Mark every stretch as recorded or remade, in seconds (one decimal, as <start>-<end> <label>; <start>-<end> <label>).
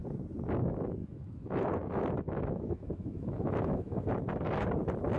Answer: 0.0-1.0 recorded; 1.0-4.1 remade; 4.1-5.2 recorded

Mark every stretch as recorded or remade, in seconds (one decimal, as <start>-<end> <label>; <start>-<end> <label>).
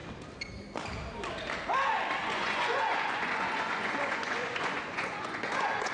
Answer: 0.0-2.2 recorded; 2.2-5.9 remade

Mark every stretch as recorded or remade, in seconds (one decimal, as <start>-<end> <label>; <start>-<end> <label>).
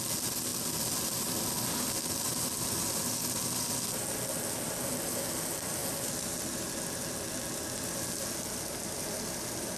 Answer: 0.0-9.8 recorded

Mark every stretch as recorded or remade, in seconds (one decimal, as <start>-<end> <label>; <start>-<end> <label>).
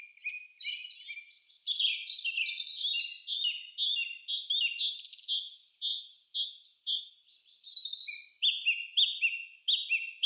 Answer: 0.0-10.3 recorded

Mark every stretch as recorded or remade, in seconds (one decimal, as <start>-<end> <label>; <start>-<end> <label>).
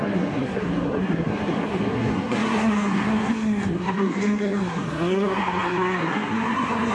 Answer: 0.0-6.9 remade